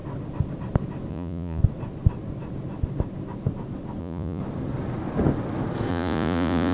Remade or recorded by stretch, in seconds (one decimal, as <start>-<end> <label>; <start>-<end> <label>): 0.0-1.1 recorded; 1.1-1.6 remade; 1.6-4.0 recorded; 4.0-4.4 remade; 4.4-5.9 recorded; 5.9-6.7 remade

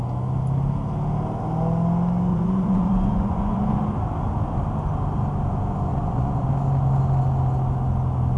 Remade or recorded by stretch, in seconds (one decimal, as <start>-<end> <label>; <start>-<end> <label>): 0.0-2.3 recorded; 2.3-3.8 remade; 3.8-5.9 recorded; 5.9-6.5 remade; 6.5-8.4 recorded

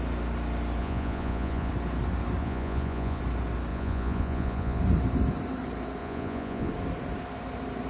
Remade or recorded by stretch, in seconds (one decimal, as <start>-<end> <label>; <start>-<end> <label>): 0.0-0.8 recorded; 0.8-1.7 remade; 1.7-2.4 recorded; 2.4-3.2 remade; 3.2-3.7 recorded; 3.7-4.8 remade; 4.8-6.0 recorded; 6.0-6.7 remade; 6.7-7.9 recorded

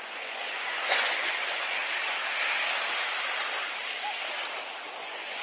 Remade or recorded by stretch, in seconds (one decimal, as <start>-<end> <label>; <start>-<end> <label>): 0.0-1.8 remade; 1.8-5.0 recorded; 5.0-5.4 remade

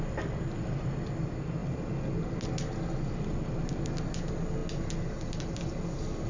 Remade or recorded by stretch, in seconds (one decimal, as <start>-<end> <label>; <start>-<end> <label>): 0.0-6.3 recorded

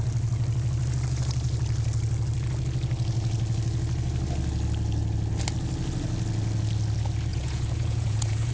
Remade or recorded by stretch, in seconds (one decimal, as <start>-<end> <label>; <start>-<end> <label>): 0.0-7.3 recorded; 7.3-8.5 remade

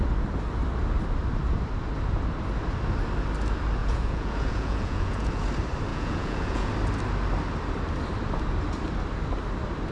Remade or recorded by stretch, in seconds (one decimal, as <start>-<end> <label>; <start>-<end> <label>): 0.0-3.8 recorded; 3.8-5.4 remade; 5.4-5.9 recorded; 5.9-6.7 remade; 6.7-9.9 recorded